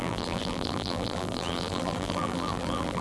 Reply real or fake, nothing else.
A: fake